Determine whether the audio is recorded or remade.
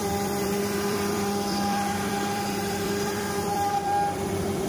remade